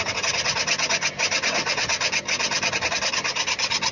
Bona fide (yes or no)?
yes